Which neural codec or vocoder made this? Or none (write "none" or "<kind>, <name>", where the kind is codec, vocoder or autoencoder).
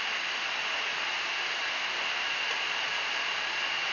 none